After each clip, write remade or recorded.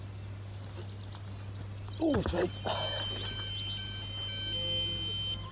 recorded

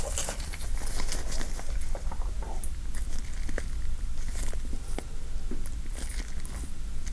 recorded